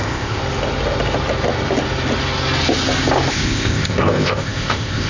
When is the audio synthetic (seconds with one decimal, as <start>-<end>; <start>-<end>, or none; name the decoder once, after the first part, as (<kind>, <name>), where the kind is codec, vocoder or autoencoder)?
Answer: 0.0-0.4 (codec, ZipCodec); 3.3-5.1